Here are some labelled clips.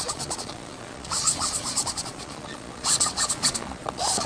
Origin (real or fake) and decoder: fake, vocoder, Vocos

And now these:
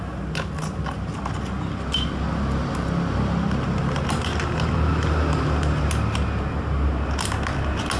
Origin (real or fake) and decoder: real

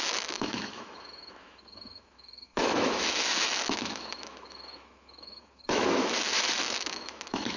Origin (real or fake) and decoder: fake, autoencoder, DAC-VAE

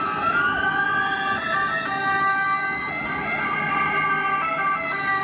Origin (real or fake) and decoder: real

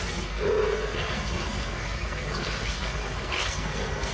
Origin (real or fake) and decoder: fake, codec, SNAC